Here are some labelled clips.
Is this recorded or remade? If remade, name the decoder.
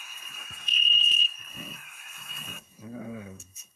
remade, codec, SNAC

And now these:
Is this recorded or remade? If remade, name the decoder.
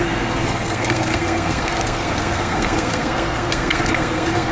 remade, codec, SNAC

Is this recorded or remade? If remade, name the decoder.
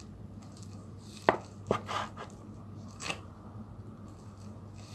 recorded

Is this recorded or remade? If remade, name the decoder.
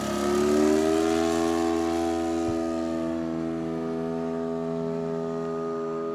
recorded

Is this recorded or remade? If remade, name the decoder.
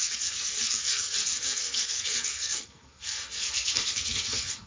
remade, codec, SNAC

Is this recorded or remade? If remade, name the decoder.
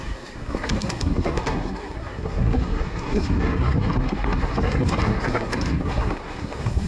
remade, codec, SNAC